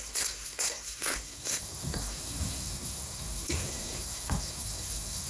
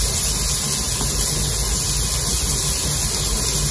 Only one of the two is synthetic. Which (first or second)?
first